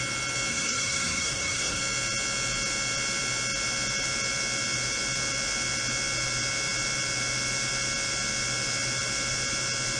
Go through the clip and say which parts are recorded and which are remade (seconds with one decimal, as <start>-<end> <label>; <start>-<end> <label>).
0.0-0.5 recorded; 0.5-1.8 remade; 1.8-10.0 recorded